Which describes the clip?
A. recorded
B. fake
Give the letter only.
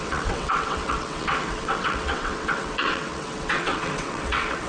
B